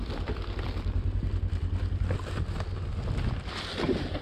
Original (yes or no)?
yes